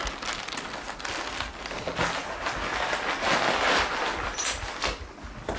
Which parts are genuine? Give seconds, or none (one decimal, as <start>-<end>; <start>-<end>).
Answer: 0.0-5.6